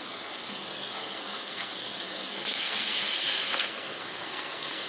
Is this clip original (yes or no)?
no